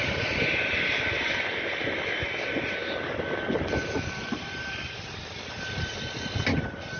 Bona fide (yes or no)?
yes